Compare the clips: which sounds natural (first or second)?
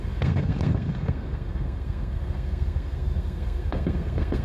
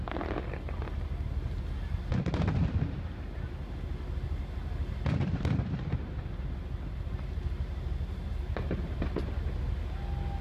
second